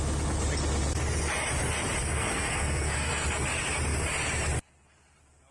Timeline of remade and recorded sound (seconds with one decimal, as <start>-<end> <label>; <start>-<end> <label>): 0.0-2.0 recorded; 2.0-3.1 remade; 3.1-5.5 recorded

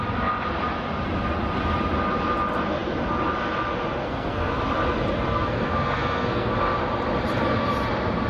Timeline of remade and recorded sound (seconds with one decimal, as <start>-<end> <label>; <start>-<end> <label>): 0.0-4.0 recorded; 4.0-4.5 remade; 4.5-5.3 recorded; 5.3-6.5 remade; 6.5-8.3 recorded

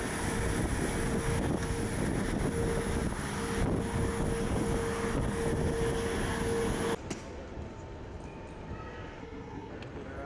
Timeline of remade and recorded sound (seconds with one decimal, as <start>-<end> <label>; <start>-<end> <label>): 0.0-9.2 recorded; 9.2-9.7 remade; 9.7-10.3 recorded

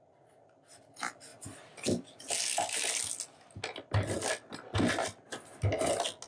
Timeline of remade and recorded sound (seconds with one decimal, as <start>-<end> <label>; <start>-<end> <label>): 0.0-6.3 recorded

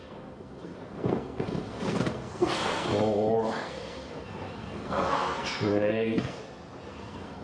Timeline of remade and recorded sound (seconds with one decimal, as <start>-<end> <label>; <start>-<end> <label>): 0.0-2.9 remade; 2.9-3.5 recorded; 3.5-6.4 remade; 6.4-6.9 recorded; 6.9-7.4 remade

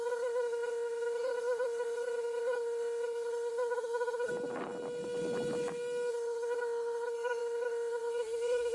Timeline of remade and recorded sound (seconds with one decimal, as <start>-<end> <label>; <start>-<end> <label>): 0.0-4.3 remade; 4.3-6.1 recorded; 6.1-8.7 remade